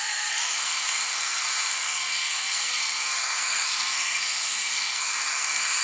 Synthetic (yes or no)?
yes